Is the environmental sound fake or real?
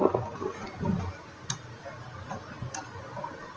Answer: real